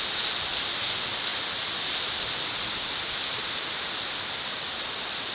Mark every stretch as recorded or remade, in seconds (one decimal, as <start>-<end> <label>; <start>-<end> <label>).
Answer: 0.0-1.3 recorded; 1.3-2.1 remade; 2.1-5.3 recorded